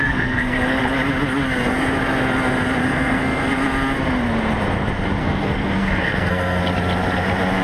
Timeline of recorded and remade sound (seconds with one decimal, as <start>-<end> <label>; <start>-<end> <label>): 0.0-0.8 remade; 0.8-2.8 recorded; 2.8-3.5 remade; 3.5-5.2 recorded; 5.2-6.6 remade; 6.6-7.6 recorded